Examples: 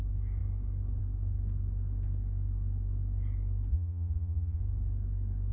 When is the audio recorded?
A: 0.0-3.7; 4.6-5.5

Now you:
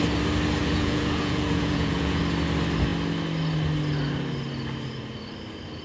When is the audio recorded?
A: 0.0-0.6; 2.2-5.8

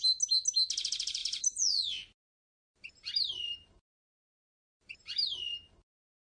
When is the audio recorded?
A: 0.0-1.2; 5.0-6.4

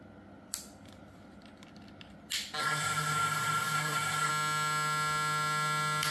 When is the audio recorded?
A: 0.0-2.6; 4.3-6.1

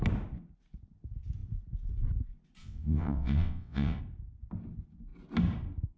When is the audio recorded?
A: 0.0-2.6; 4.0-6.0

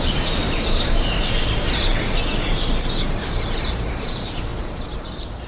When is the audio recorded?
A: 1.9-3.0